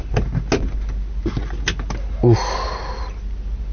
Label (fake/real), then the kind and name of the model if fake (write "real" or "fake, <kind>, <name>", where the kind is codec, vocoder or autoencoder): real